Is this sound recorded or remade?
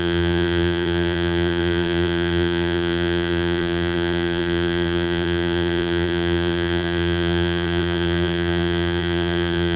remade